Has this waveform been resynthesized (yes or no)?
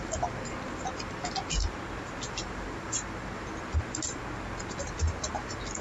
no